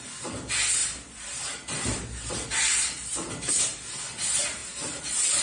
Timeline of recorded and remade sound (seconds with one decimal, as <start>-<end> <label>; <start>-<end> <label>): 0.0-0.8 recorded; 0.8-3.5 remade; 3.5-4.6 recorded; 4.6-5.4 remade